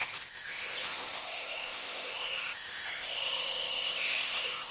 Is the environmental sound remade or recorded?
remade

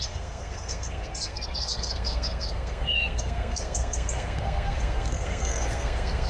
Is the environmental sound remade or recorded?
remade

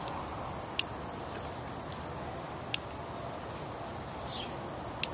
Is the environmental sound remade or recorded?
recorded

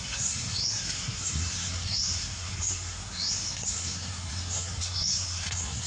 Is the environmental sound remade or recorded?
remade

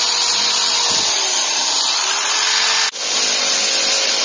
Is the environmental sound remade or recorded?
recorded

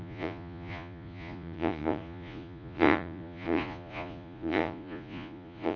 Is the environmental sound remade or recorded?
remade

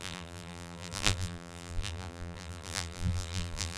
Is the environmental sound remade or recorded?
remade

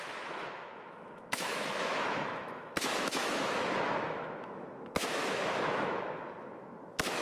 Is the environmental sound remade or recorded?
remade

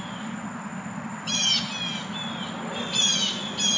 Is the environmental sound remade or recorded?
recorded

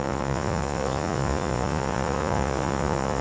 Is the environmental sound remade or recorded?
remade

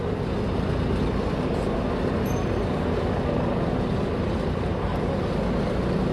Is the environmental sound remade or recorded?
recorded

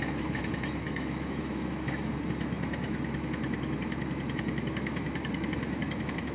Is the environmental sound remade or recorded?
remade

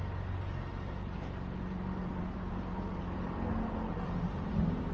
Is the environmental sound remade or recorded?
recorded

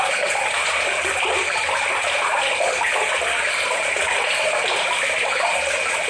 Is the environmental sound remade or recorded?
recorded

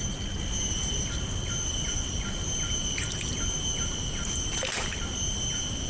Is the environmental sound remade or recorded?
recorded